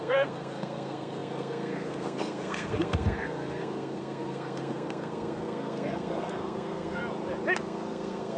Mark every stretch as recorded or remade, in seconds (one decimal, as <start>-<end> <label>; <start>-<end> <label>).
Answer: 0.0-7.0 remade; 7.0-7.6 recorded; 7.6-8.4 remade